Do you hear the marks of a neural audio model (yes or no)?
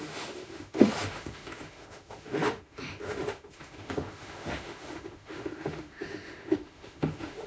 yes